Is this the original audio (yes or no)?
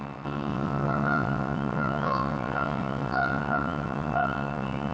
no